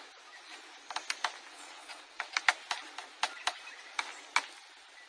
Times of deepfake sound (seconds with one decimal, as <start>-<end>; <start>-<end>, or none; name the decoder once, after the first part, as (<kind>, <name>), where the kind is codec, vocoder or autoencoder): 1.5-2.3 (vocoder, WaveNeXt)